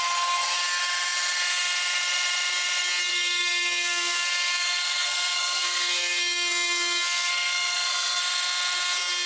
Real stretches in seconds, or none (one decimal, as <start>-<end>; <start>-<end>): 0.0-3.1; 8.2-9.3